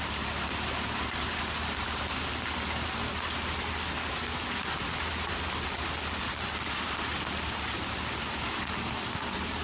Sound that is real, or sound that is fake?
real